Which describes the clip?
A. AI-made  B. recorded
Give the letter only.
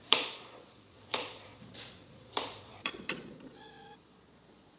A